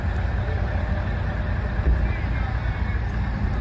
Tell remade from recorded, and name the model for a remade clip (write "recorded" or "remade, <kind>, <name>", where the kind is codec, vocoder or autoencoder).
recorded